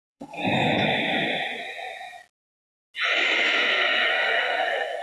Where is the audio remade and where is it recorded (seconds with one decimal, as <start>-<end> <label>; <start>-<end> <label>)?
0.0-0.4 remade; 0.4-3.4 recorded; 3.4-5.0 remade

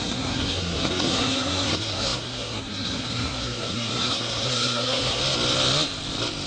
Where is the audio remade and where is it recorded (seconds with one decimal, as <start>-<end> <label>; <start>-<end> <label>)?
0.0-5.2 remade; 5.2-6.5 recorded